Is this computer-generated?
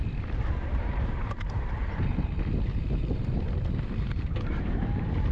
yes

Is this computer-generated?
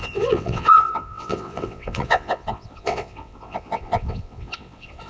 yes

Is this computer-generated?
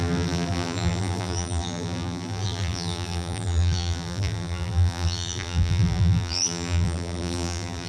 yes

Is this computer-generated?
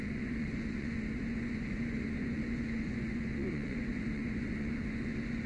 yes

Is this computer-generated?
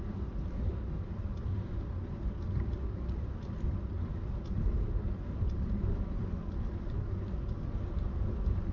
no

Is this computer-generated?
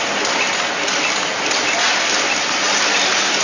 no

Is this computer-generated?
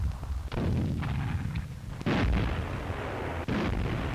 no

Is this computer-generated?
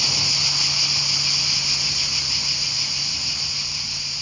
no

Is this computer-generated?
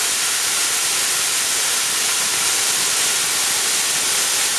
no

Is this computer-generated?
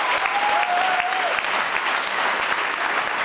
no